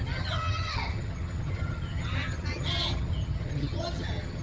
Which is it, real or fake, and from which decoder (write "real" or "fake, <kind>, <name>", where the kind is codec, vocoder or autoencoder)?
fake, vocoder, HiFi-GAN